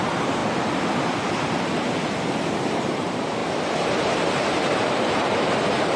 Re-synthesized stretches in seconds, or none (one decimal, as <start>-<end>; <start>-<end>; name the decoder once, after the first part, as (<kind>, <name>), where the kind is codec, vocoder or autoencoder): 0.0-0.4 (vocoder, BigVGAN v2); 2.7-6.0